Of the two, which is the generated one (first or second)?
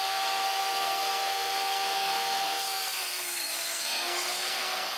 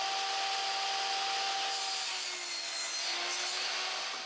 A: first